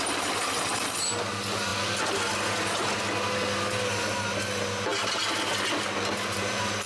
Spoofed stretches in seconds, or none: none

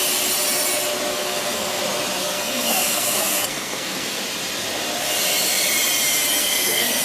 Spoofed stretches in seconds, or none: 1.1-1.8 (codec, SNAC); 2.2-4.2; 6.4-7.0

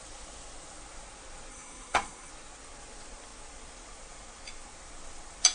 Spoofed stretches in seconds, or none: 1.5-2.3 (codec, SNAC)